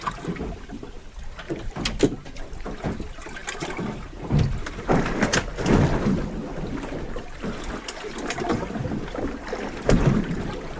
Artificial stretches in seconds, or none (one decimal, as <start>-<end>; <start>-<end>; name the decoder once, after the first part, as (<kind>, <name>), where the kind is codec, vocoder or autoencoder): none